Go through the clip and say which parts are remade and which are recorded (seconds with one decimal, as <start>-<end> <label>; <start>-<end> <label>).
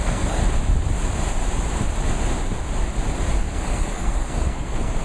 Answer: 0.0-0.4 remade; 0.4-3.4 recorded; 3.4-5.0 remade